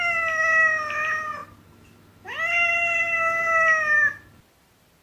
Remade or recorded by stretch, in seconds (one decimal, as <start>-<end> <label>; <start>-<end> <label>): 0.0-5.0 recorded